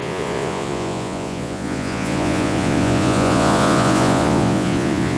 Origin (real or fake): fake